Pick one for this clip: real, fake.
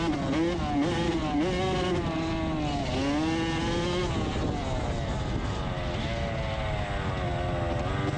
real